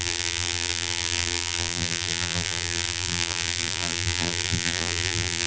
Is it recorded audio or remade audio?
remade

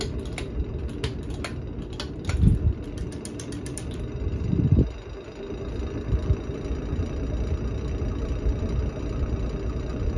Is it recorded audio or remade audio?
recorded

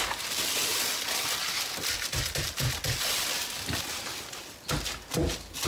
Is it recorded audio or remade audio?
recorded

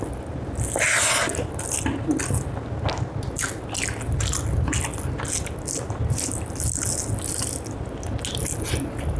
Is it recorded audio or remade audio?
recorded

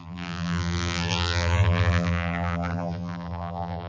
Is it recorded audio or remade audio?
remade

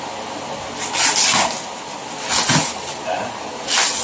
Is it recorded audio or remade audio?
recorded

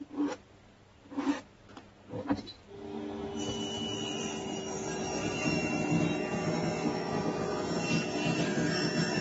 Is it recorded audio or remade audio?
recorded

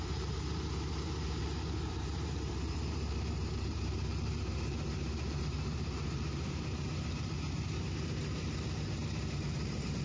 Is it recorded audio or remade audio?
remade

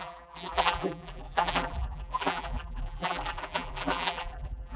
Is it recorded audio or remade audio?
remade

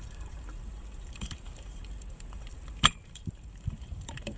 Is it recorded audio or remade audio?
remade